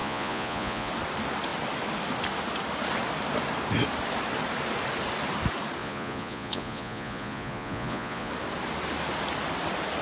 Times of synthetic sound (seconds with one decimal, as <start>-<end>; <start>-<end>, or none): 0.0-0.9; 5.8-8.3

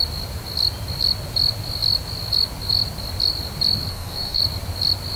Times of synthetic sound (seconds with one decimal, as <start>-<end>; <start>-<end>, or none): 3.9-4.4

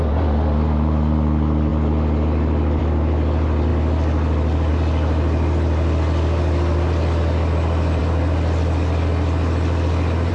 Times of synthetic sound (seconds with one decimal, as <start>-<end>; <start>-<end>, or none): none

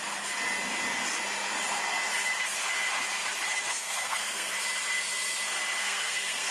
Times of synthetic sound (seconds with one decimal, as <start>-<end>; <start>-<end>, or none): 3.7-4.5; 5.8-6.5

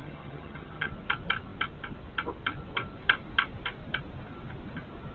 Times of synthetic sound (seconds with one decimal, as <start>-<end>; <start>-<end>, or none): 0.0-0.9

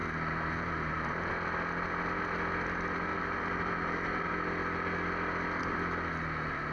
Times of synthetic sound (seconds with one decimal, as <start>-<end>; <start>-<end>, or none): 0.0-1.3; 3.1-4.3

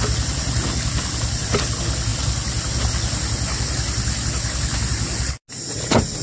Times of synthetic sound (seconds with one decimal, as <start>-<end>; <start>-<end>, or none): none